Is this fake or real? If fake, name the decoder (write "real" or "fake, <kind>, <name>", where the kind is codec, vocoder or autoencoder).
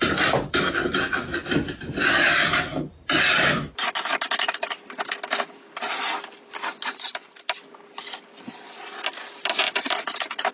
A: real